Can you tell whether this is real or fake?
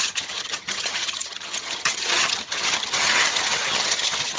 fake